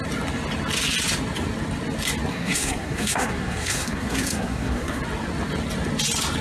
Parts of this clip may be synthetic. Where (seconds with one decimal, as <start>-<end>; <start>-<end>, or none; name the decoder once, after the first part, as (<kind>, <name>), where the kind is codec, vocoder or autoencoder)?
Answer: 2.3-5.0 (codec, SNAC)